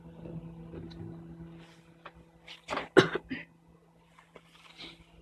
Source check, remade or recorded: recorded